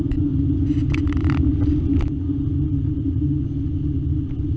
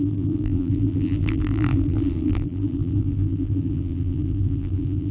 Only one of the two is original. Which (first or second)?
first